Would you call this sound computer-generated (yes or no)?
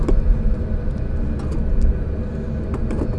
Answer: no